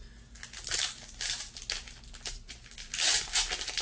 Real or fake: real